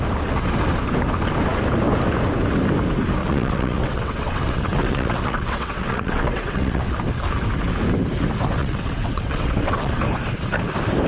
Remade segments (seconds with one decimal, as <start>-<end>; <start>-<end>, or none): 3.2-6.9; 8.6-10.0